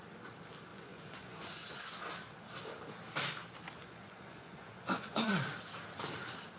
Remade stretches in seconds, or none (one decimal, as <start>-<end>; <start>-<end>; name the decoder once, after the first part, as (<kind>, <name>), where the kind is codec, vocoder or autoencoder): 0.7-1.7 (vocoder, Vocos); 3.8-5.3